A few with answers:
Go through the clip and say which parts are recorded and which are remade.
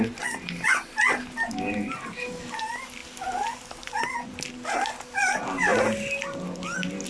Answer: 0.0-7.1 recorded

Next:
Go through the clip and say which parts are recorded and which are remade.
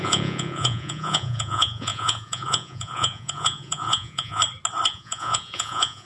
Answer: 0.0-4.4 remade; 4.4-4.9 recorded; 4.9-6.1 remade